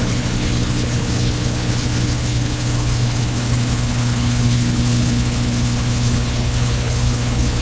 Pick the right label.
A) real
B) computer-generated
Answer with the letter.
B